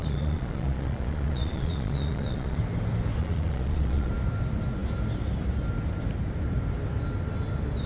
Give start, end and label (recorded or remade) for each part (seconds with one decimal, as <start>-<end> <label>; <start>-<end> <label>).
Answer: 0.0-2.6 remade; 2.6-3.2 recorded; 3.2-4.1 remade; 4.1-7.9 recorded